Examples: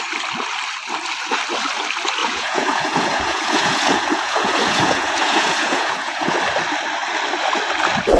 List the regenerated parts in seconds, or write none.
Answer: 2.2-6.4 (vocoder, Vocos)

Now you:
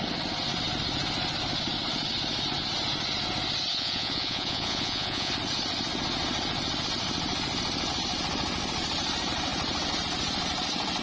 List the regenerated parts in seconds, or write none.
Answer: 3.7-5.3 (vocoder, Vocos)

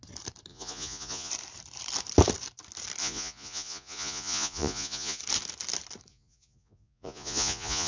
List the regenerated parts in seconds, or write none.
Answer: 0.5-1.3 (vocoder, Vocos); 3.0-5.2; 6.1-7.9

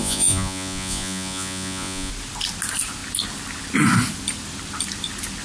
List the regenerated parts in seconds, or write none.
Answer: 0.0-2.1 (vocoder, Vocos)

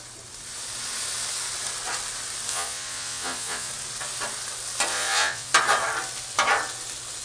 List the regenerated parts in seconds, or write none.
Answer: 2.5-3.7 (vocoder, Vocos); 4.9-5.5

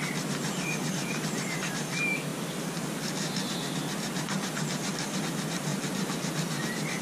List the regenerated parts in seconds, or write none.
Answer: none

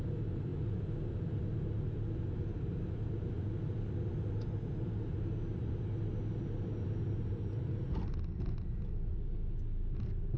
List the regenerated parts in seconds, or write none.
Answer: none